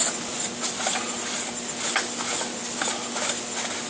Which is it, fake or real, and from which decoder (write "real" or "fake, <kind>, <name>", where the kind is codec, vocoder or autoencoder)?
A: real